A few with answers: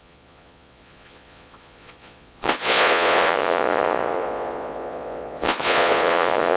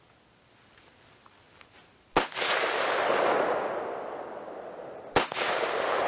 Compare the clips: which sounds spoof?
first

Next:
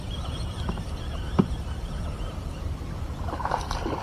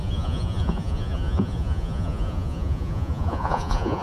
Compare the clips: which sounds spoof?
second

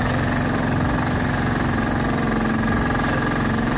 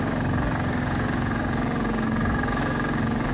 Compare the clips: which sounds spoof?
second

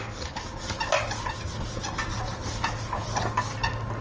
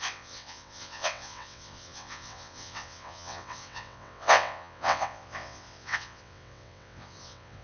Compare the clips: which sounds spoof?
second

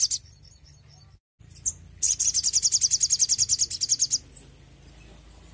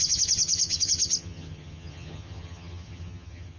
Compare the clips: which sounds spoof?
second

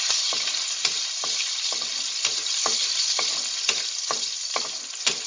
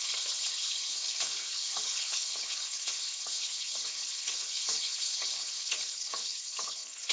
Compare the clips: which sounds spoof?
second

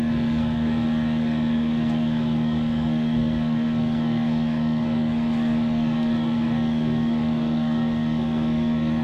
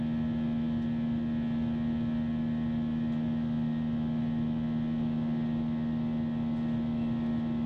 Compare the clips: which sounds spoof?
first